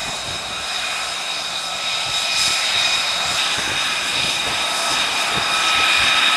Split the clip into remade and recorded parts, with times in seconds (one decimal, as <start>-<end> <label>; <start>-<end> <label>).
0.0-6.4 recorded